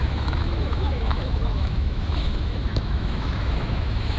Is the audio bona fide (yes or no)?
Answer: no